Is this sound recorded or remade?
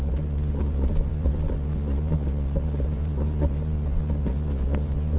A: remade